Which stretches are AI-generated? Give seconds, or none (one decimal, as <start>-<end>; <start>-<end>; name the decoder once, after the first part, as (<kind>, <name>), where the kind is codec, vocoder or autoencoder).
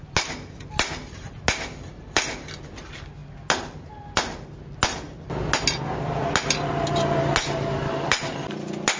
none